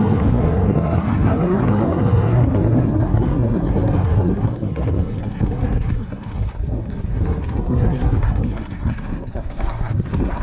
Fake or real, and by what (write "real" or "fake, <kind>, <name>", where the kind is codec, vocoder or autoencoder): fake, codec, SNAC